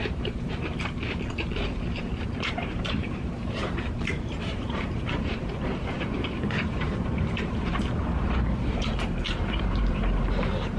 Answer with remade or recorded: remade